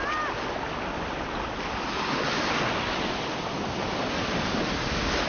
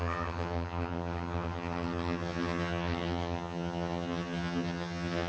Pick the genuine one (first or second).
first